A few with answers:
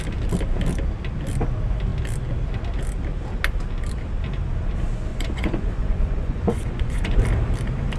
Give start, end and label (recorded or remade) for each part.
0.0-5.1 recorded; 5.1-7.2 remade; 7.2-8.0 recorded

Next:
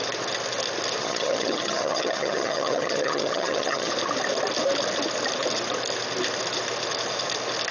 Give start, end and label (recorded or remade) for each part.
0.0-1.0 recorded; 1.0-3.9 remade; 3.9-7.7 recorded